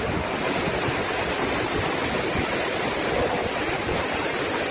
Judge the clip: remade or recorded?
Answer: recorded